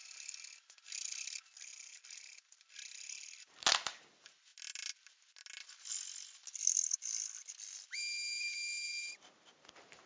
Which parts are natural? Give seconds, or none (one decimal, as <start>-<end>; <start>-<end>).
0.0-10.1